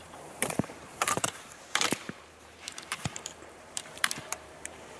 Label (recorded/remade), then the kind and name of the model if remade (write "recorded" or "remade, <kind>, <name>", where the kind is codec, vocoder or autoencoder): remade, vocoder, BigVGAN v2